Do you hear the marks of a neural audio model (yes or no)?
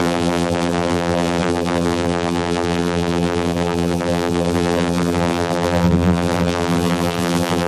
yes